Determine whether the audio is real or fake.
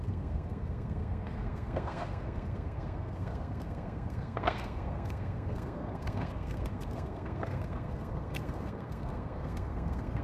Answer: fake